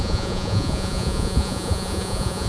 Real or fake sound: fake